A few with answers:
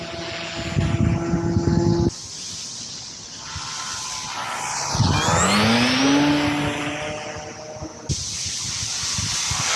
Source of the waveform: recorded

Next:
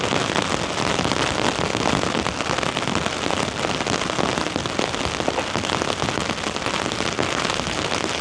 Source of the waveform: recorded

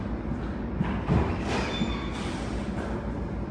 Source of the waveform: recorded